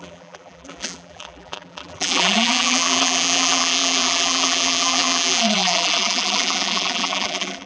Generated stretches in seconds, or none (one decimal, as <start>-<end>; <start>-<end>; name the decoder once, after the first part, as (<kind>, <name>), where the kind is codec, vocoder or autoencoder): 0.0-7.7 (vocoder, BigVGAN v2)